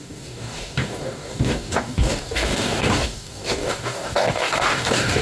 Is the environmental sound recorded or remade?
remade